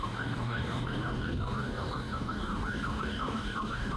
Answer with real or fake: fake